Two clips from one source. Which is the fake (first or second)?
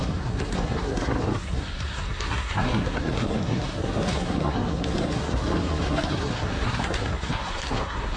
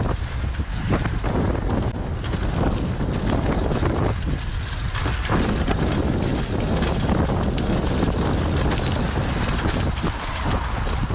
first